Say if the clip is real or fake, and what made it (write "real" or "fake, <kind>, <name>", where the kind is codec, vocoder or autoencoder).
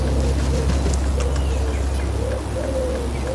real